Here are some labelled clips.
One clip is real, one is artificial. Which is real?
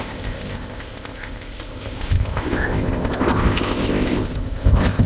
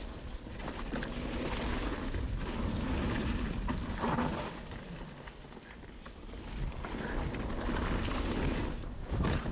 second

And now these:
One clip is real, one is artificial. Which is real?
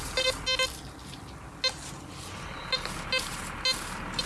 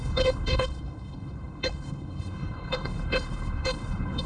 first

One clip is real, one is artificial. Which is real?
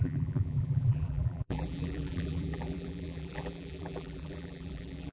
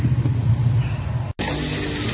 second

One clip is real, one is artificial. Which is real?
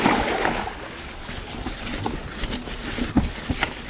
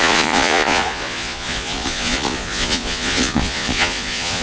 first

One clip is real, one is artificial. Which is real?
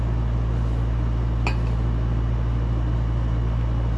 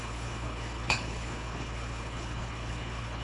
first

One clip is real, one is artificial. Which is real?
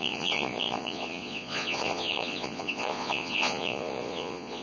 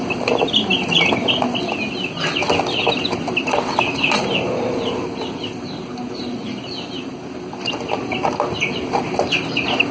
second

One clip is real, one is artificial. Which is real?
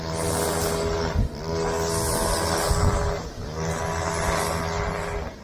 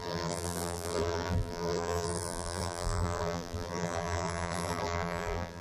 first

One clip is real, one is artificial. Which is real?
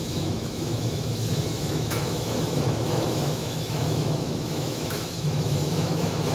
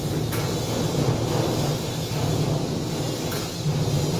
second